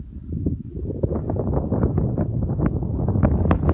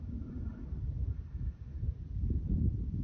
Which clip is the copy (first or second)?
second